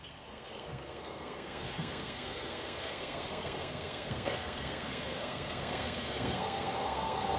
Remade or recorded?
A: remade